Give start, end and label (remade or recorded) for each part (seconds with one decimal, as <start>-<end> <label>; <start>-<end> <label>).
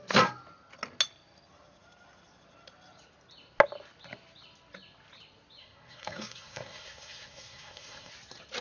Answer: 0.0-5.6 recorded; 5.6-8.1 remade; 8.1-8.6 recorded